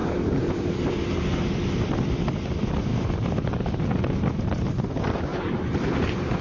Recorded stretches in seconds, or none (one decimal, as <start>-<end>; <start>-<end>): 1.1-2.9; 4.3-5.3